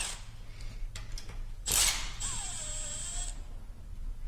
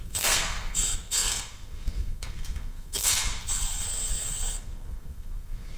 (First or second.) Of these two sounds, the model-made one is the second